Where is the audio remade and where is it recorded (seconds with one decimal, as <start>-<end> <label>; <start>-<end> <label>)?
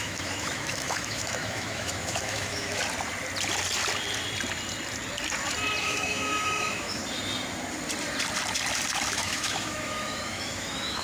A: 0.0-2.8 remade; 2.8-5.8 recorded; 5.8-7.0 remade; 7.0-9.1 recorded; 9.1-11.0 remade